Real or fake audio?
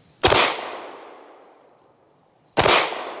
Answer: real